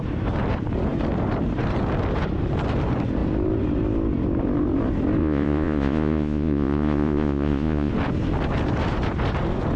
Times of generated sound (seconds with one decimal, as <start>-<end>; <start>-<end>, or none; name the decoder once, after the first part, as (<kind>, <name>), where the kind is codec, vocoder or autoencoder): 5.2-7.9 (vocoder, Vocos)